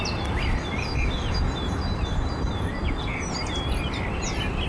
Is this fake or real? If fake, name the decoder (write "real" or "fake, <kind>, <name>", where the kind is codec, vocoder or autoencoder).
real